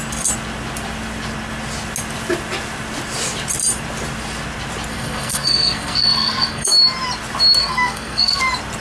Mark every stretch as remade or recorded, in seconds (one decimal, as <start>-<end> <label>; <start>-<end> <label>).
0.0-4.9 recorded; 4.9-6.7 remade; 6.7-7.6 recorded; 7.6-8.4 remade; 8.4-8.8 recorded